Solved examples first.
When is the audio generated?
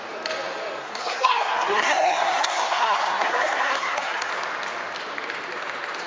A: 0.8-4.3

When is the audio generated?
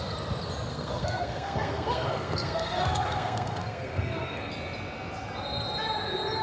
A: 0.7-4.5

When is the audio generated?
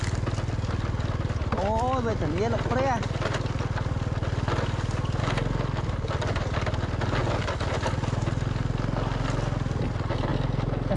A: none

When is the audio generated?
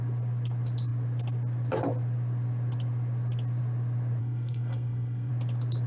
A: 4.2-5.3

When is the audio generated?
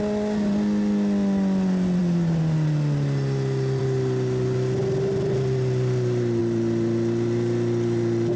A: none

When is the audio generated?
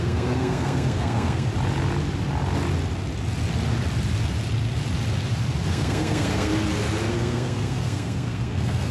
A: 0.0-1.5; 5.7-6.5; 7.1-8.9